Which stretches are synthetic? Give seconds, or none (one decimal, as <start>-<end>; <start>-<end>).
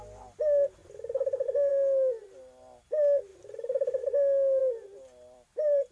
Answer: 3.3-4.0; 4.6-5.9